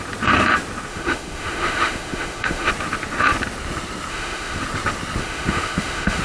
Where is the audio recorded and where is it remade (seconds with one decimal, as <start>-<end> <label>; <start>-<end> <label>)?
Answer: 0.0-0.9 recorded; 0.9-2.7 remade; 2.7-4.1 recorded; 4.1-4.6 remade; 4.6-5.2 recorded; 5.2-6.2 remade